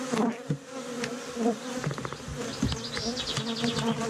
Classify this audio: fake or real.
real